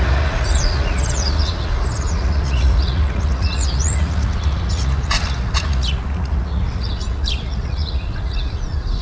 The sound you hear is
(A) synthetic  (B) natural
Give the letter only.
A